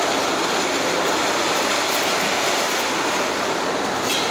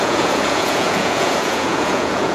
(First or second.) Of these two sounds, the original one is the first